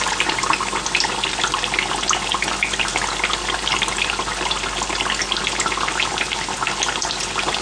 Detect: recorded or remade recorded